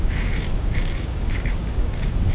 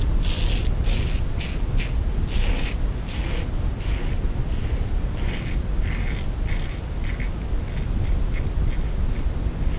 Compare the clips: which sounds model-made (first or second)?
first